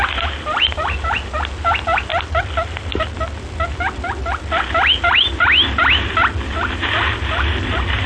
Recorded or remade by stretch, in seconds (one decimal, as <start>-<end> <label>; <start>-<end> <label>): 0.0-8.1 recorded